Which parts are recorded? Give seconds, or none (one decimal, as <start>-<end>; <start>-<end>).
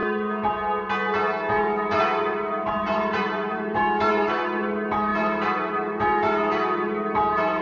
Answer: 0.0-1.6